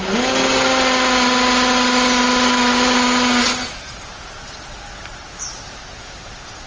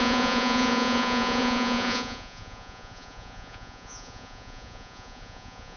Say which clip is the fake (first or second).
second